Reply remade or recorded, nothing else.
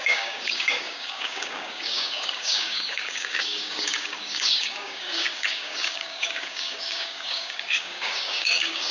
remade